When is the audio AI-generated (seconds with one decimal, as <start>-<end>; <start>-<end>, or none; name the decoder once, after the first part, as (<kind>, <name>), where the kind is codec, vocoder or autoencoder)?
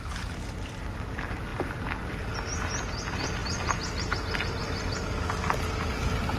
none